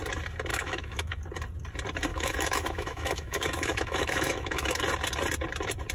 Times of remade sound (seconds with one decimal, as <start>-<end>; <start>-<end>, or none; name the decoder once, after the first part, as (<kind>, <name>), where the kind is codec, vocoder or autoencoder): 0.5-1.2 (autoencoder, DAC-VAE); 2.1-4.8